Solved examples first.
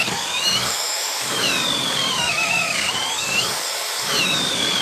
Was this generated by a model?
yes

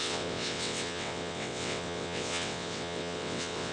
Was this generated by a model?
yes